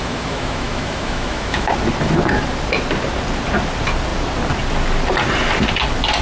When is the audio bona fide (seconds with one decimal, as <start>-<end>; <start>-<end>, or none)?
1.7-6.2